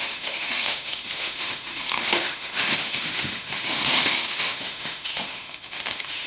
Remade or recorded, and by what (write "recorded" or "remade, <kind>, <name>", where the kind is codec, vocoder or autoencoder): remade, autoencoder, DAC-VAE